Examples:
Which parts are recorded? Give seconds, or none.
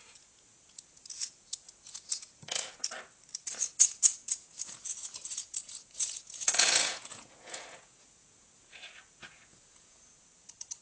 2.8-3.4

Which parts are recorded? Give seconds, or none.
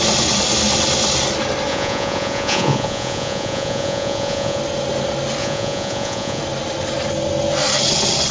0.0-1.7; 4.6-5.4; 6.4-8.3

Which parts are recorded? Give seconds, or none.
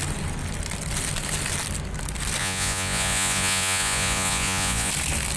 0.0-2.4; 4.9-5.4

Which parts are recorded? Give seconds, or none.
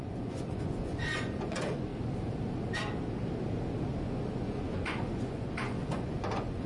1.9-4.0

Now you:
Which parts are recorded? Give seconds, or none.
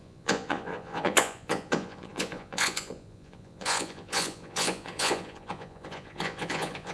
none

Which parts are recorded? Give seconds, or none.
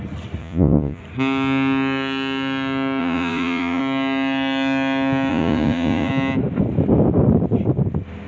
0.0-0.4; 1.0-3.0; 3.8-5.3; 6.1-8.3